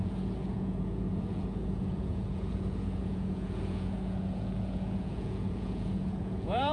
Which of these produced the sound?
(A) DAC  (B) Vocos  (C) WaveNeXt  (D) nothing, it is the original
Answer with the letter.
B